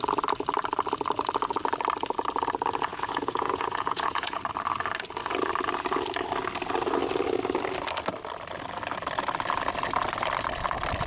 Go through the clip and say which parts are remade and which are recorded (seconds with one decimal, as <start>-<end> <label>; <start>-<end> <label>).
0.0-2.9 recorded; 2.9-4.4 remade; 4.4-11.1 recorded